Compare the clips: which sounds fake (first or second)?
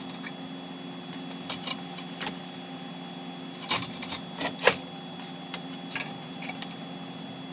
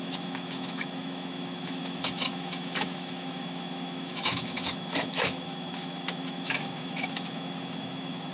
second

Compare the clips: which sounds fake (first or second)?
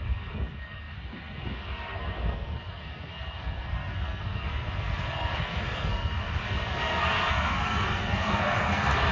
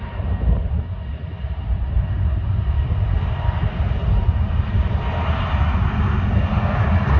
first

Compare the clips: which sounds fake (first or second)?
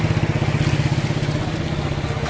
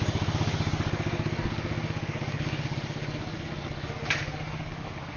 second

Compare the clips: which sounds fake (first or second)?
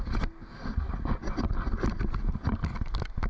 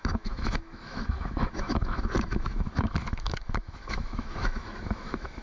second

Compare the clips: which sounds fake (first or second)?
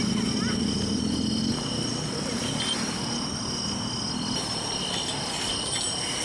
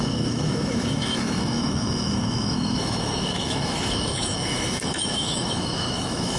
second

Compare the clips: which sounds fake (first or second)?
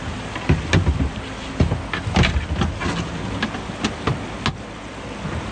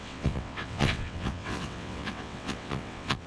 second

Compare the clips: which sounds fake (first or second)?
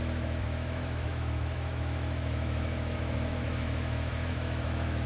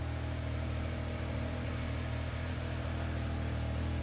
first